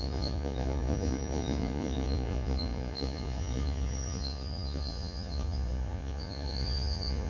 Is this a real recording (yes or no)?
no